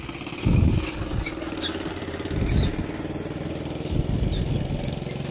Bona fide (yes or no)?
yes